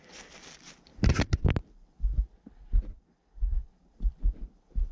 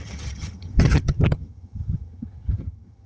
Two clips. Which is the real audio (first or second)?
first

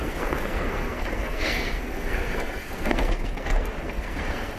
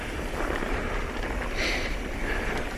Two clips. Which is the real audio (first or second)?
second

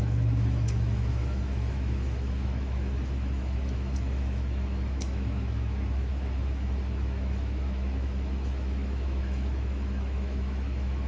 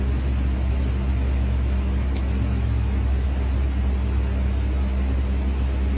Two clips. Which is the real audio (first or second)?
second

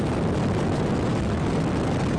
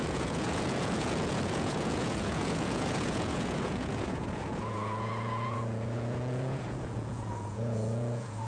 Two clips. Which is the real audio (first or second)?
first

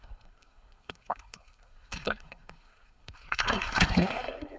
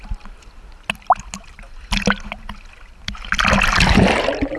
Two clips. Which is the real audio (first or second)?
second